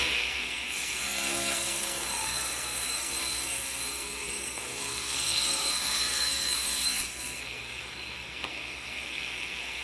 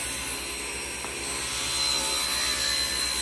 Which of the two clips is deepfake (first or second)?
first